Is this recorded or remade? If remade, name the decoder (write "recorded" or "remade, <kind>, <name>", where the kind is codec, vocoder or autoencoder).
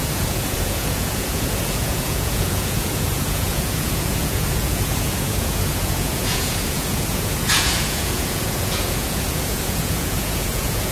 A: remade, vocoder, Vocos